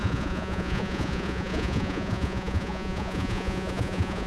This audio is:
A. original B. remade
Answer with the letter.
B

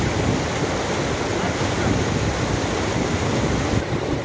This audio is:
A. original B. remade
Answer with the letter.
A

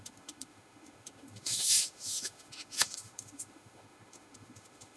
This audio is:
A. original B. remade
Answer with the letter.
B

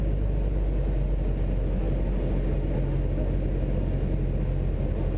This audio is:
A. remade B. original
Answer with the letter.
B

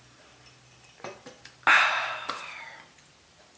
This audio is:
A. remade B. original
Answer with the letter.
B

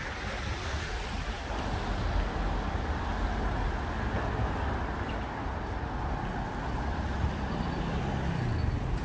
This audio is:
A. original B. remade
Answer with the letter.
A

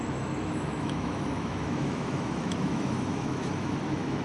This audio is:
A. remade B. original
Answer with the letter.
A